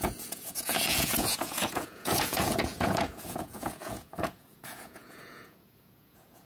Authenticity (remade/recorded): remade